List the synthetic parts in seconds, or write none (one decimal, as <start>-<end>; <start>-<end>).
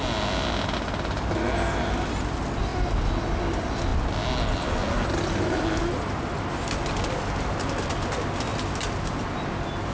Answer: none